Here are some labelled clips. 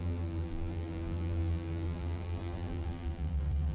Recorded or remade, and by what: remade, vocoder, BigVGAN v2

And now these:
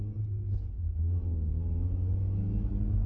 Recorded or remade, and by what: recorded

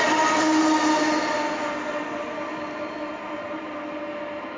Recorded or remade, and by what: recorded